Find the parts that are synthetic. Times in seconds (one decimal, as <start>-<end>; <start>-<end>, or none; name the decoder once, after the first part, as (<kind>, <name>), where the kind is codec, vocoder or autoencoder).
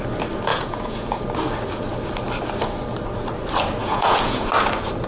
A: 0.5-1.2 (vocoder, Vocos); 3.8-4.5